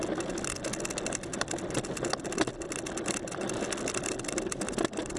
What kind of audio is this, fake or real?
real